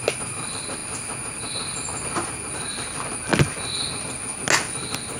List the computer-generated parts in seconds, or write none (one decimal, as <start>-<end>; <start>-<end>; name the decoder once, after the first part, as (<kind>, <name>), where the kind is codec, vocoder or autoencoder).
none